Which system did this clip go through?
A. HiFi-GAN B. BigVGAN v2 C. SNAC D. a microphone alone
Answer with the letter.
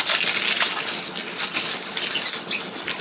D